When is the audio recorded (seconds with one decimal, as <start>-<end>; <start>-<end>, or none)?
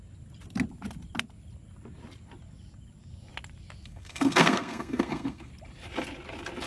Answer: 0.0-3.9; 5.5-6.7